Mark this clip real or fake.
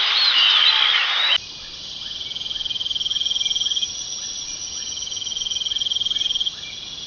real